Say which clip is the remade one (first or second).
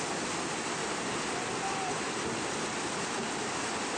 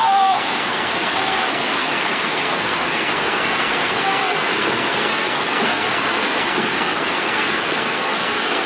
second